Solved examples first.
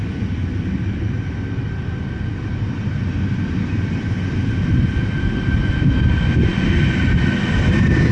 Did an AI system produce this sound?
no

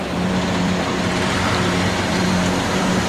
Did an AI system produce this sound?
yes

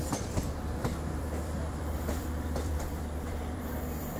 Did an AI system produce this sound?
yes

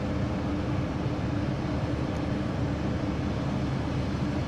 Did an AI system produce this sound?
no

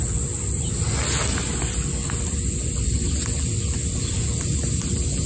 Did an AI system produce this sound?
no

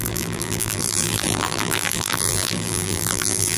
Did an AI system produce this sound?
yes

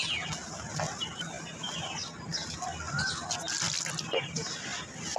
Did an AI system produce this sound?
no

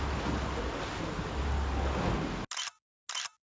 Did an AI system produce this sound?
no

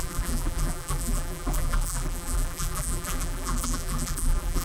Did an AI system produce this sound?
yes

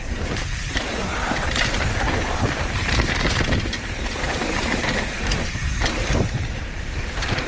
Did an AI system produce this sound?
yes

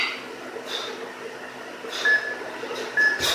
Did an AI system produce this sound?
no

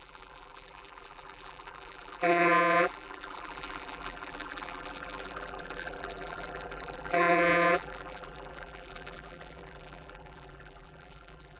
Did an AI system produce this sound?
yes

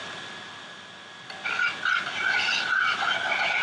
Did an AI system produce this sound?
no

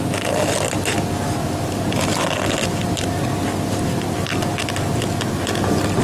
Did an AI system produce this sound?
no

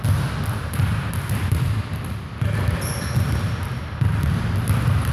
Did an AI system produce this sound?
no